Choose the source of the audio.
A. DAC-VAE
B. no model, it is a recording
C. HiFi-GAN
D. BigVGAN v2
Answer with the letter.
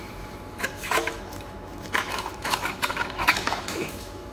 A